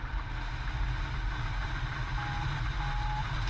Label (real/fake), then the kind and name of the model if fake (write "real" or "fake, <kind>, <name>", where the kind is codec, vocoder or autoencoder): real